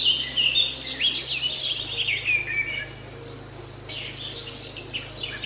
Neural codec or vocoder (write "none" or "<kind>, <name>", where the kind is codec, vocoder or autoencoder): none